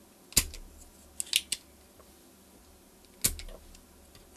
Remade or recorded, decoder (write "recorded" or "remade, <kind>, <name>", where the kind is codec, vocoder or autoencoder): recorded